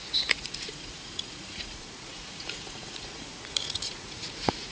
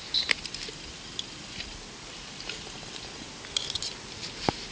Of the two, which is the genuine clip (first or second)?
second